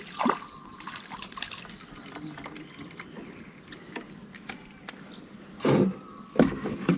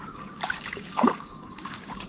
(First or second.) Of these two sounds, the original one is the first